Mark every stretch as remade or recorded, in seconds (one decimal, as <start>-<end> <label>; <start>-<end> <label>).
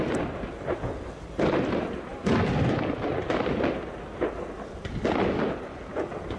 0.0-6.4 recorded